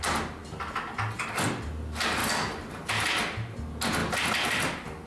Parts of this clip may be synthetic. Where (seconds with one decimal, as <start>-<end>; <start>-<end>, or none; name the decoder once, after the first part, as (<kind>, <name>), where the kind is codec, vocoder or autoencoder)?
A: none